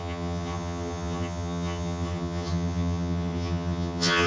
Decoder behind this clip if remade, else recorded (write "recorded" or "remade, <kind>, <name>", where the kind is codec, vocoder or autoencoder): remade, vocoder, HiFi-GAN